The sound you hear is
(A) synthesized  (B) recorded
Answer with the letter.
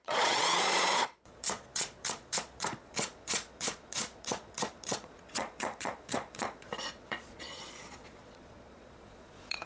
A